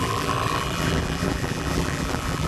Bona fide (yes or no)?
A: no